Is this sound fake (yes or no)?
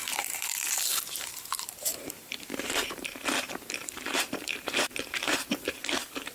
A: yes